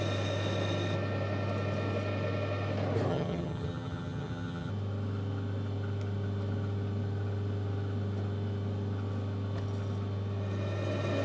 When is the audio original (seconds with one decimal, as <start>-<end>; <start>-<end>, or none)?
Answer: 0.0-3.1; 4.7-11.2